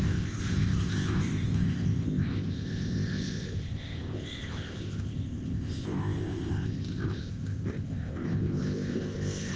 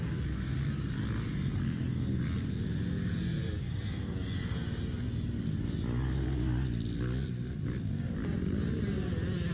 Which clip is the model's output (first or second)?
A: first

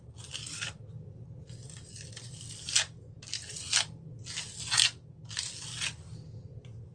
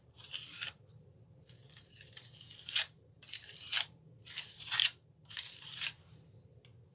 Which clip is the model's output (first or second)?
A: second